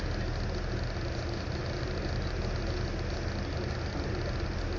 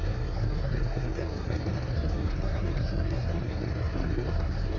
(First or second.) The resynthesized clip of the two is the second